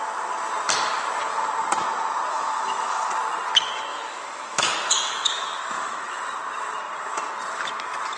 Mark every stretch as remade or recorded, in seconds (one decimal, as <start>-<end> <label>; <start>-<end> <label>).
0.0-2.3 recorded; 2.3-3.1 remade; 3.1-3.9 recorded; 3.9-6.2 remade; 6.2-8.2 recorded